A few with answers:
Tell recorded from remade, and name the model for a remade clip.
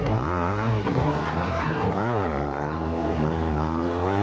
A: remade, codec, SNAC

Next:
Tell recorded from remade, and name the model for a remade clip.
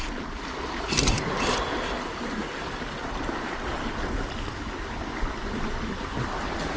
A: recorded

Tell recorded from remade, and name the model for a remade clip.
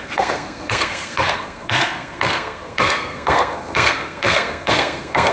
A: remade, codec, SNAC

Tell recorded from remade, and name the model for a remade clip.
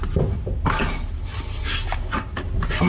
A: recorded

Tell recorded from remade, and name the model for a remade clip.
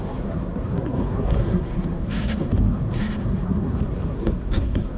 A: remade, codec, SNAC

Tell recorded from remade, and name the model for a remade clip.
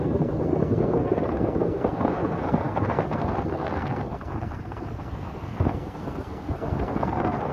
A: remade, codec, SNAC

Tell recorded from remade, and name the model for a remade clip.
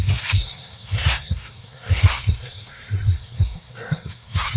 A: remade, codec, SNAC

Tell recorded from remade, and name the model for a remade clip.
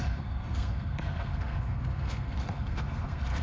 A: remade, codec, SNAC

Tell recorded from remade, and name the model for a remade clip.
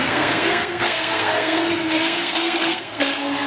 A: remade, codec, SNAC